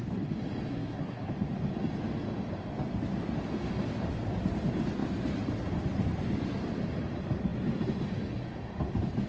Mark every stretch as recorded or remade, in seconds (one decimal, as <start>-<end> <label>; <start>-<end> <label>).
0.0-0.7 recorded; 0.7-1.3 remade; 1.3-9.3 recorded